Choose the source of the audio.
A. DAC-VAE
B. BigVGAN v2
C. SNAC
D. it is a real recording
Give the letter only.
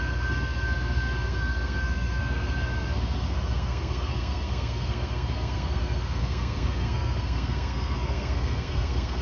C